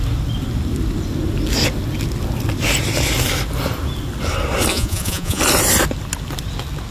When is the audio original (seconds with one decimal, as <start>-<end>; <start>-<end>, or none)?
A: 0.0-4.7; 5.4-6.9